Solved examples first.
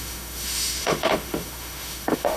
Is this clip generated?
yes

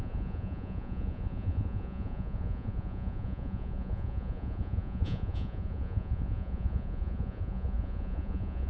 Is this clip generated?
yes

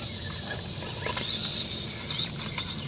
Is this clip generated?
no